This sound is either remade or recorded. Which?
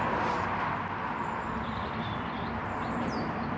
recorded